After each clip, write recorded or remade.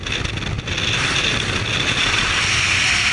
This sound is recorded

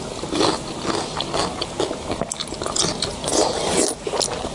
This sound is recorded